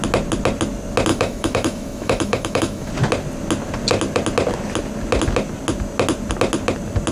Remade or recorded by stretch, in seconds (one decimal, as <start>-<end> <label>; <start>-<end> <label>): 0.0-1.1 recorded; 1.1-2.9 remade; 2.9-7.1 recorded